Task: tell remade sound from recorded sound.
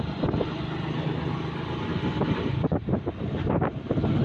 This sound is recorded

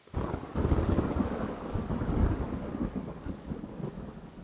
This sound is remade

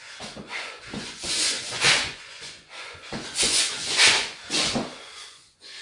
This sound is remade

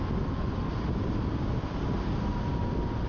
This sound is recorded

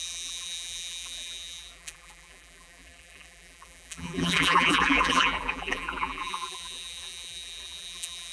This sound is remade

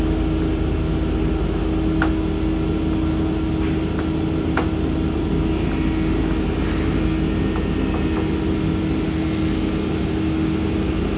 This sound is recorded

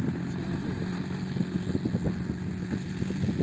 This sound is recorded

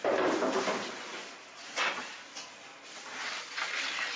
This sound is recorded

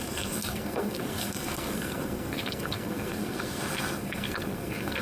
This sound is remade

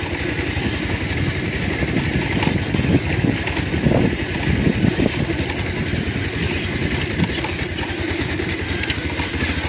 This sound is recorded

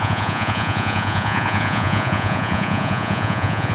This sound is remade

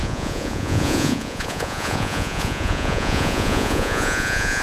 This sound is remade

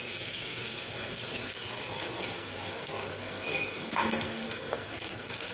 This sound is remade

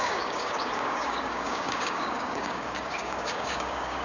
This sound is remade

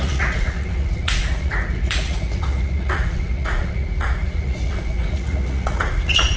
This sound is remade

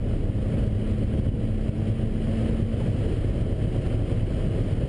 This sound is recorded